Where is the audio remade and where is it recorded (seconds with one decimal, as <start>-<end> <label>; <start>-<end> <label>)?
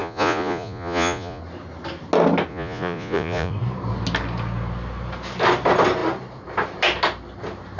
0.0-1.4 remade; 1.4-2.5 recorded; 2.5-3.5 remade; 3.5-7.8 recorded